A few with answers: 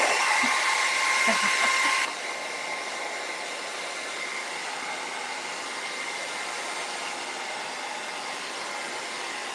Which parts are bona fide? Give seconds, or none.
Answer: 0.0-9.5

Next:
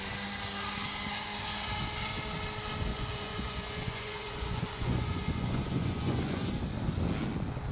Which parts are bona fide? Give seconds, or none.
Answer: 0.0-2.9; 6.5-7.7

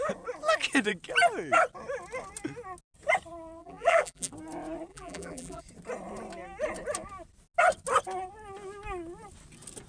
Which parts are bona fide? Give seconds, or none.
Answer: 0.0-3.6; 4.3-4.9; 5.6-9.9

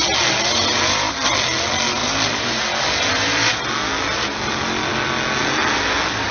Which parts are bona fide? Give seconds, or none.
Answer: 0.0-6.3

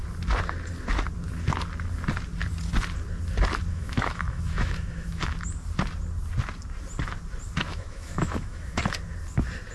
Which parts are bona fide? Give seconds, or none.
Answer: 0.0-3.7; 5.3-7.7; 8.8-9.7

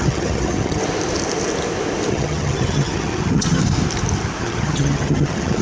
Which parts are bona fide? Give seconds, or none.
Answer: 0.8-2.1; 3.6-4.4

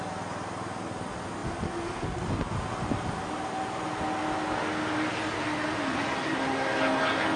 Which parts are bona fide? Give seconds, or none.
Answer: 0.0-7.4